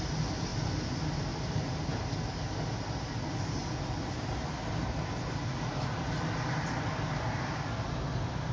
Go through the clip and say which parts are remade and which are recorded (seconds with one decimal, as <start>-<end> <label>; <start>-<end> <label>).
0.0-8.5 recorded